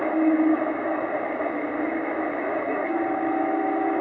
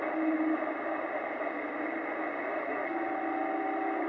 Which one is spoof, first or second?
first